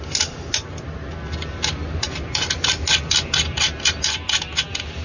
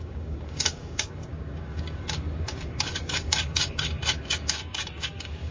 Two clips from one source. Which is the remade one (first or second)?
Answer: second